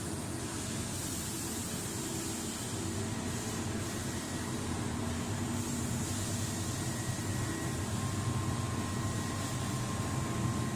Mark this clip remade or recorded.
recorded